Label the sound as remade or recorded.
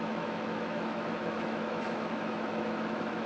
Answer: remade